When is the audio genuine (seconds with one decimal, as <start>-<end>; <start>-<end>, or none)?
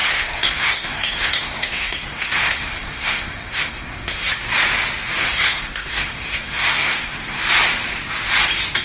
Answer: 4.3-5.2; 7.4-8.8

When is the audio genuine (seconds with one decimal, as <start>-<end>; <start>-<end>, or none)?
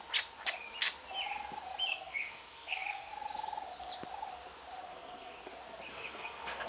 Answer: 0.0-1.9; 3.1-4.8; 5.5-5.9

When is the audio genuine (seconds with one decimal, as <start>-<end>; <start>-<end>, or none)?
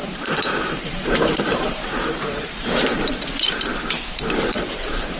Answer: none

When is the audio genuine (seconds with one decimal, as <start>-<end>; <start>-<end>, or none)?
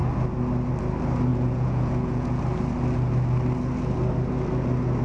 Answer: 0.0-1.3; 2.4-5.0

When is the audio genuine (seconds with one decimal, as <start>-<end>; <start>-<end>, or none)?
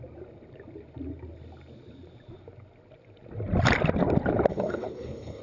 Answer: 0.0-4.5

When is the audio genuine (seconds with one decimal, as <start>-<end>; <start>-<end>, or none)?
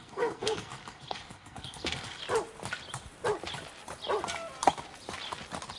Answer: 2.2-5.8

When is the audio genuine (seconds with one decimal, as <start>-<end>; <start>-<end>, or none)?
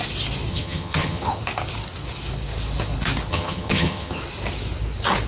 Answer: 0.0-0.5; 1.4-3.3; 4.2-5.3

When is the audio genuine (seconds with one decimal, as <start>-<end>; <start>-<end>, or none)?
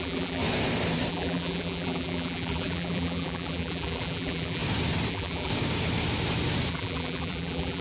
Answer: 0.4-1.1; 4.6-5.1; 5.5-6.7